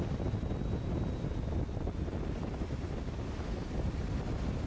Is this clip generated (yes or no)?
no